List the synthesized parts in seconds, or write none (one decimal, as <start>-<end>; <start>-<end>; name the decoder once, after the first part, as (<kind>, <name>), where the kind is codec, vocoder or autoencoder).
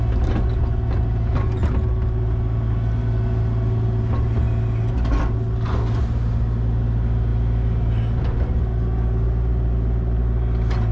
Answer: none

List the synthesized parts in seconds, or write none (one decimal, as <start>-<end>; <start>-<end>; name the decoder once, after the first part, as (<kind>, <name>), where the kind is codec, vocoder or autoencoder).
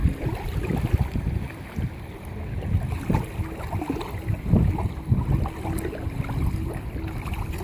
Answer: 0.0-1.5 (vocoder, BigVGAN v2)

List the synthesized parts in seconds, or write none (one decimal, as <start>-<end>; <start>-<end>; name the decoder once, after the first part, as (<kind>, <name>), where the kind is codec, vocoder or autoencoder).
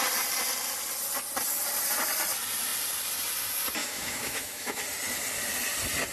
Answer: 3.8-4.8 (autoencoder, DAC-VAE)